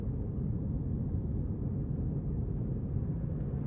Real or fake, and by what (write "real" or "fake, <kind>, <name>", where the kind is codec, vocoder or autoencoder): real